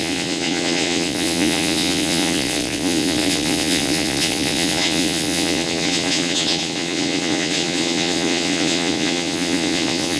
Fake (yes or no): yes